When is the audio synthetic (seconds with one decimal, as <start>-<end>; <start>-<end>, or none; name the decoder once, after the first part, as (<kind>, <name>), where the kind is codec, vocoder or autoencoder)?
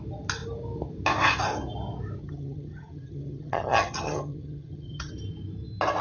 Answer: 2.2-5.1 (vocoder, HiFi-GAN)